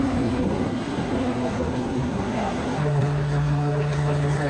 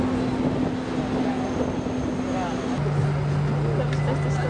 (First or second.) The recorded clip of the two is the second